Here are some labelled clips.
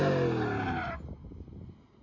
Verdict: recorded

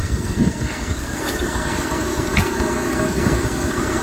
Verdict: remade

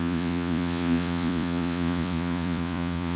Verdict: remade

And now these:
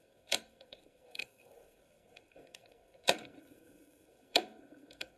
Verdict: remade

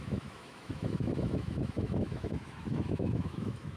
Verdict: remade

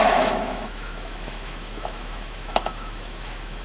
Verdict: remade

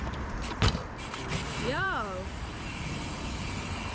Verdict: remade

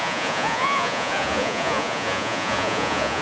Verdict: remade